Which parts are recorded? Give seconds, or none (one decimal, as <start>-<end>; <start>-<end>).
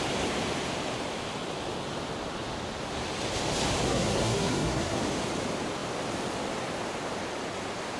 0.0-3.9; 5.0-8.0